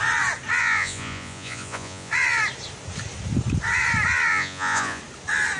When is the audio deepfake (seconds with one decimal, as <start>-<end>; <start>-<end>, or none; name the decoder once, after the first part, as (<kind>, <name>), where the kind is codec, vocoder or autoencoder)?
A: 0.6-2.1 (vocoder, Vocos); 4.3-5.0